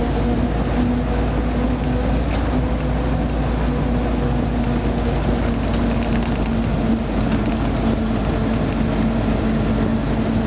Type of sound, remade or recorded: recorded